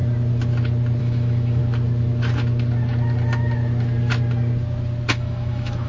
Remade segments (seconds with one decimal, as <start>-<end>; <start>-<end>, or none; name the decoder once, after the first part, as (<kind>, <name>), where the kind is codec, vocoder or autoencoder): 1.0-1.6 (autoencoder, DAC-VAE); 5.1-5.9